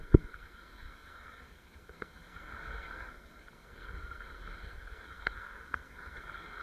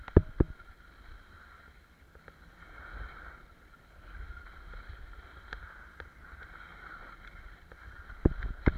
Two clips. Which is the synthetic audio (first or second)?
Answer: first